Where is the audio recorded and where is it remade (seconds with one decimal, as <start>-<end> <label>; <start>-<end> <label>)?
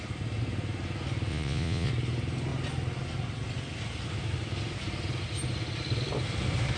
0.0-1.3 recorded; 1.3-1.9 remade; 1.9-6.8 recorded